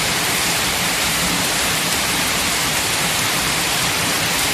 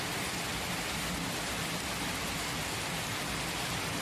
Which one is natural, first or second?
second